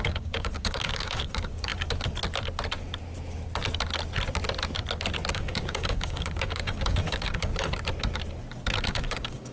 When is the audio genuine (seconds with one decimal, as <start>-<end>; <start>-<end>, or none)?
1.7-5.3; 7.5-8.8

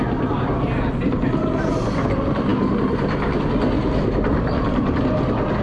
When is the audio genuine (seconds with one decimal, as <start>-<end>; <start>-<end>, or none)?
0.0-5.6

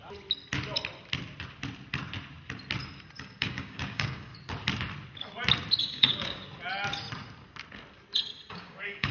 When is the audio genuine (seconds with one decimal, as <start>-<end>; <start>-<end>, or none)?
0.0-3.4; 4.3-5.8; 6.4-8.5

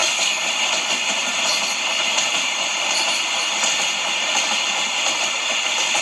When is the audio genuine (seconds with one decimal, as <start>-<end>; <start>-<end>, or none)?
0.5-6.0

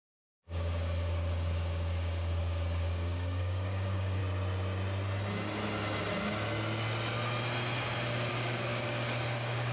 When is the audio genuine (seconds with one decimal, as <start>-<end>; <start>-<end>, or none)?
4.2-8.3

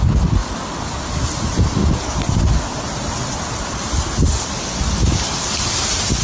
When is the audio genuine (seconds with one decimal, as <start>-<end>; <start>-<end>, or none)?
0.0-6.2

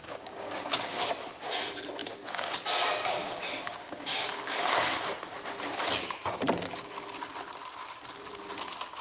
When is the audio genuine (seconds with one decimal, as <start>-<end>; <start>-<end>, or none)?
1.1-2.0; 2.5-3.2; 5.0-9.0

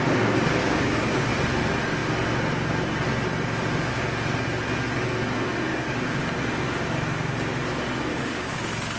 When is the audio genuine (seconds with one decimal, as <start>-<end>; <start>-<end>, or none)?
0.0-0.6; 1.3-5.7; 6.2-8.1; 8.6-9.0